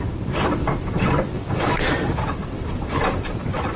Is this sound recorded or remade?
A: remade